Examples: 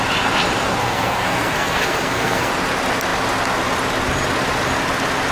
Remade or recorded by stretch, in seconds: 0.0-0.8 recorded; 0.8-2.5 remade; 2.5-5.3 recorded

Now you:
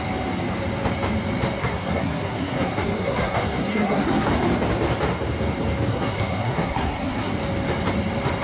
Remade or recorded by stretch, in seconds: 0.0-1.6 recorded; 1.6-4.3 remade; 4.3-5.9 recorded; 5.9-7.3 remade; 7.3-8.4 recorded

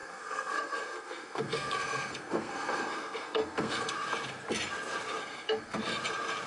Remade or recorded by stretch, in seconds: 0.0-3.9 remade; 3.9-5.2 recorded; 5.2-5.8 remade; 5.8-6.5 recorded

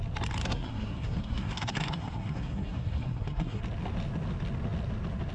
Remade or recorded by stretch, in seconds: 0.0-0.4 recorded; 0.4-3.6 remade; 3.6-5.3 recorded

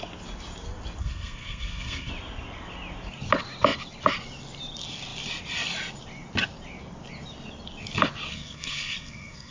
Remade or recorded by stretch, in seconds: 0.0-1.0 recorded; 1.0-2.1 remade; 2.1-8.3 recorded; 8.3-9.5 remade

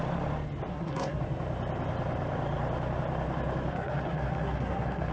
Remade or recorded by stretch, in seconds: 0.0-0.7 recorded; 0.7-1.2 remade; 1.2-3.7 recorded; 3.7-5.1 remade

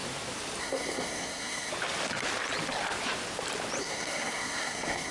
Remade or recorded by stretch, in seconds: 0.0-0.6 recorded; 0.6-1.7 remade; 1.7-3.8 recorded; 3.8-5.1 remade

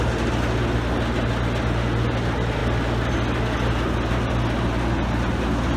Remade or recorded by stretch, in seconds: 0.0-5.8 recorded